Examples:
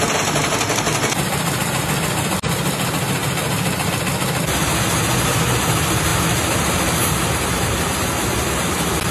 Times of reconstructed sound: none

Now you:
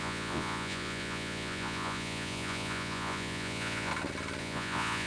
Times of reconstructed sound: 0.0-3.9 (vocoder, Vocos); 4.4-5.1